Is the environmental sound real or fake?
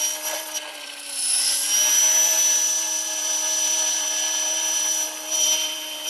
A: fake